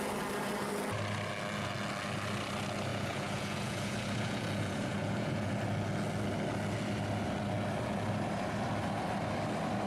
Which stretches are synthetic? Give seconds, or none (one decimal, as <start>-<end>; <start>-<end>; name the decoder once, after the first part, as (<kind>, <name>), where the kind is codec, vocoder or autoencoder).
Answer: 2.9-5.5 (vocoder, Vocos)